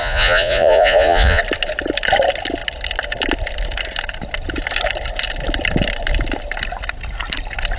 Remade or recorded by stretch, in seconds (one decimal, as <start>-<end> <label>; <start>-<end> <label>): 0.0-1.4 remade; 1.4-7.8 recorded